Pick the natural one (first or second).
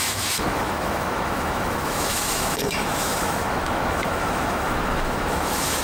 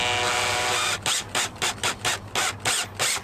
second